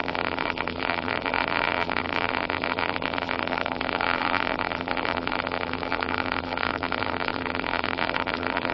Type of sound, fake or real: fake